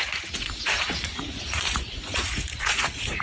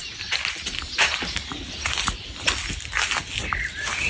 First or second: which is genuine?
second